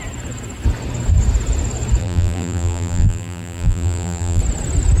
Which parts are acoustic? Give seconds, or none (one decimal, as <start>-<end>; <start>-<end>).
0.0-2.0; 4.4-5.0